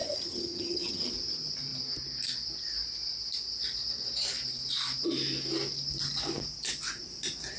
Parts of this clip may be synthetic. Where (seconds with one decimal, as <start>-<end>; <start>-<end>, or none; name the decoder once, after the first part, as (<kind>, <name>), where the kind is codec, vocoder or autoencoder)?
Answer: 0.0-1.1 (vocoder, HiFi-GAN)